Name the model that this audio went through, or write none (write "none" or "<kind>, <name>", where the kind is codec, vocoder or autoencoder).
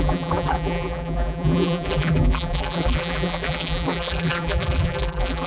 vocoder, BigVGAN v2